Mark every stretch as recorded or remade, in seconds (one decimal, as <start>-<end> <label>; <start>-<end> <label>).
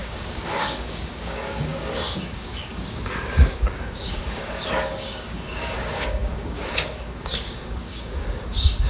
0.0-8.9 remade